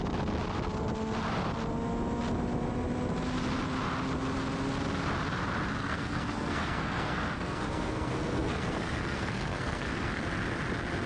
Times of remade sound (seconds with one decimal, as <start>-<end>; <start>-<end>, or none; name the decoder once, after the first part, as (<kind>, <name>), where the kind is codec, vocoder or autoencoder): 5.8-10.2 (codec, SNAC)